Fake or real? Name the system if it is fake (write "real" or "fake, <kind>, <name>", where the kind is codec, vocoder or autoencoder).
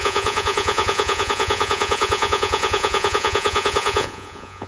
fake, vocoder, Vocos